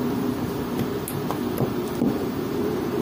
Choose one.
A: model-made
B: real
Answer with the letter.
B